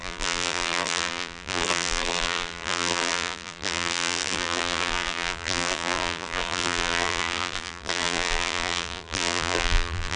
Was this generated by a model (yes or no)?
yes